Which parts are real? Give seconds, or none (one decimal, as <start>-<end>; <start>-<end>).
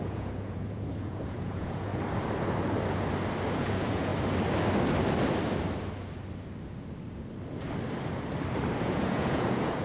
1.9-3.5; 4.1-8.8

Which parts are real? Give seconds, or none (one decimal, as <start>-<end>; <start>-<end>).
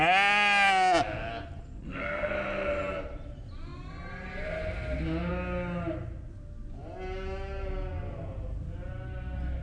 0.0-1.8; 2.3-9.6